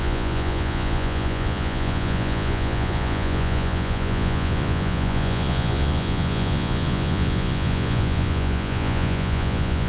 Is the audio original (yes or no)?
no